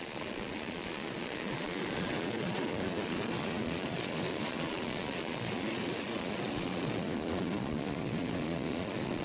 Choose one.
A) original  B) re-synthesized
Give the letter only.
B